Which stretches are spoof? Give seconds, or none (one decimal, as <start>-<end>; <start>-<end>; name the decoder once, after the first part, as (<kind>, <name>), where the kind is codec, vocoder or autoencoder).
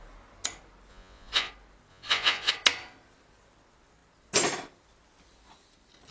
0.9-1.5 (vocoder, Vocos); 1.9-2.5